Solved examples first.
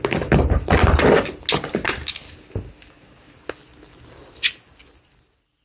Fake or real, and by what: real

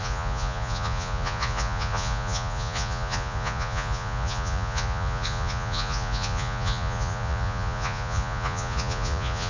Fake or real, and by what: fake, vocoder, Vocos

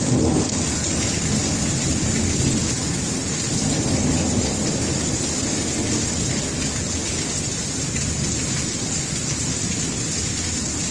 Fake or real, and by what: real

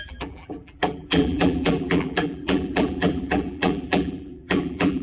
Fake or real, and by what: fake, vocoder, BigVGAN v2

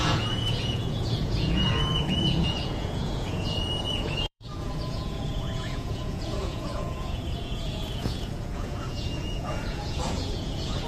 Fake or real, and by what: fake, vocoder, Vocos